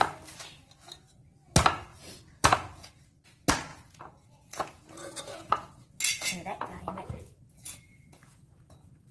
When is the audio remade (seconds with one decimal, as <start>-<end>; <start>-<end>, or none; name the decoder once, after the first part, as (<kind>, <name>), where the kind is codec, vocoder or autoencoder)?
1.9-2.9 (vocoder, Vocos); 3.7-9.1